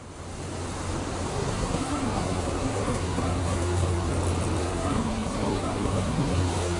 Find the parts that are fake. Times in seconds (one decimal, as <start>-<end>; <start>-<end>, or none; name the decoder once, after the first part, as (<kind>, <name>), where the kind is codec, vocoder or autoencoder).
1.3-4.1 (codec, SNAC); 4.6-6.8